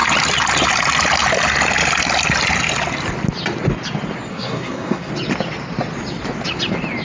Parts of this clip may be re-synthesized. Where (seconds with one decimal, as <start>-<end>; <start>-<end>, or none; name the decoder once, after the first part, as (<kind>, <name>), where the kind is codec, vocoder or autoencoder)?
4.3-5.1 (codec, SNAC)